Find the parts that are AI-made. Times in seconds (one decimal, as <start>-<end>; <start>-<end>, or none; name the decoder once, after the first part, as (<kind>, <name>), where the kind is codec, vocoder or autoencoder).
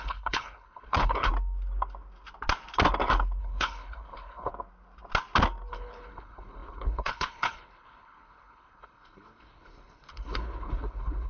0.0-1.3 (codec, HILCodec); 3.4-4.5; 5.7-11.3